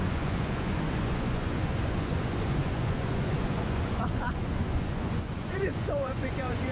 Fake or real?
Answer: fake